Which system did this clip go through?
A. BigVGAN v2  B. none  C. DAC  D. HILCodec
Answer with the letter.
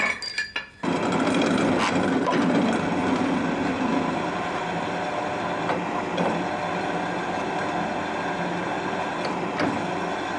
B